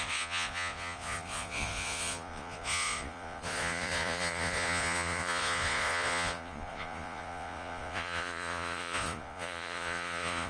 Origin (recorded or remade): remade